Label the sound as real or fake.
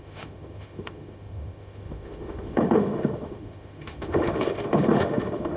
fake